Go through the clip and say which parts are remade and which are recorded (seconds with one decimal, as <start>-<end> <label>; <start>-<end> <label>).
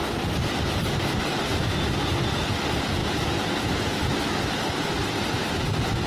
0.0-3.0 recorded; 3.0-6.1 remade